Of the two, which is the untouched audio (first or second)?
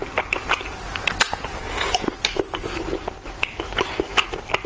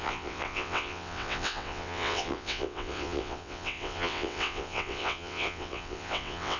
first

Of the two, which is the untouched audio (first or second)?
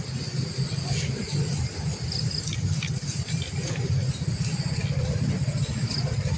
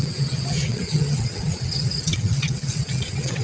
first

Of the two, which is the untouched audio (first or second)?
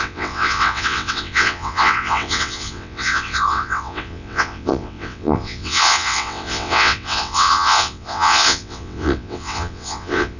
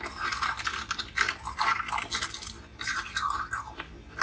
second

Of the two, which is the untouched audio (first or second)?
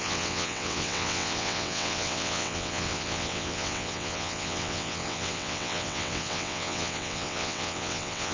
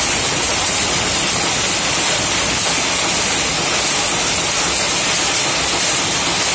second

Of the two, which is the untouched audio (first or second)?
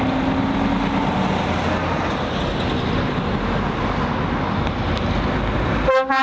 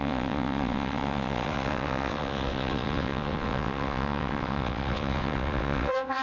first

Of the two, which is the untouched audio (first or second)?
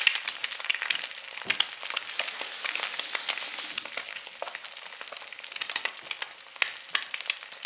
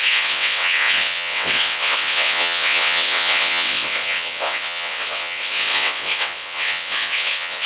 first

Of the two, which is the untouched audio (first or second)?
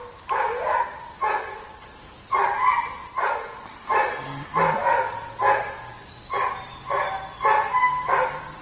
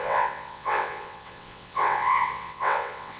first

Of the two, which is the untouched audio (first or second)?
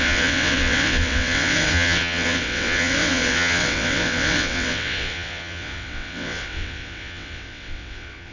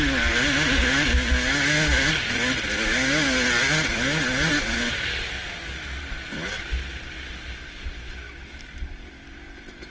second